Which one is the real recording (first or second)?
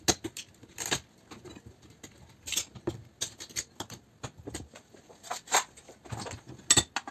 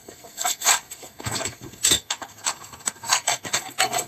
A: first